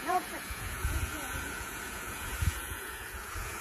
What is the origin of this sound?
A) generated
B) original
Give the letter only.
A